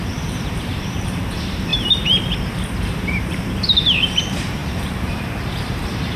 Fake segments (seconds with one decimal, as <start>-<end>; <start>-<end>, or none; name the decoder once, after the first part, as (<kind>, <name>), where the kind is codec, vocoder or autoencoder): 0.0-1.7 (vocoder, BigVGAN v2); 2.9-6.2